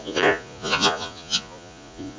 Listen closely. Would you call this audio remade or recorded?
remade